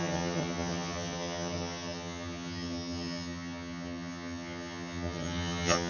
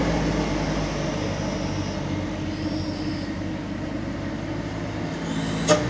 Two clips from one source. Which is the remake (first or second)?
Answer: first